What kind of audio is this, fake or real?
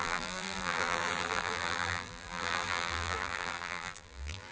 fake